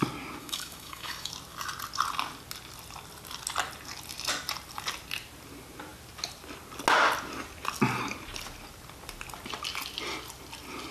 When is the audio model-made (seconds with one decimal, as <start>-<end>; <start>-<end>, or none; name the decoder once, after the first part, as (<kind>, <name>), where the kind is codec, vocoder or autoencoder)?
0.4-1.3 (autoencoder, DAC-VAE)